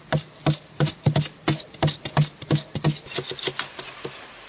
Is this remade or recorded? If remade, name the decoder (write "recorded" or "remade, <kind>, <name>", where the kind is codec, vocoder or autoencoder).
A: recorded